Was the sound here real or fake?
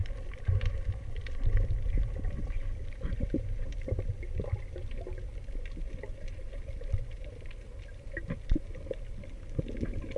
fake